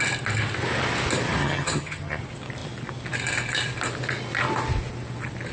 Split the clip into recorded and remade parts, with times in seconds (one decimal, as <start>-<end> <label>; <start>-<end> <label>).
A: 0.0-1.4 recorded; 1.4-2.2 remade; 2.2-5.5 recorded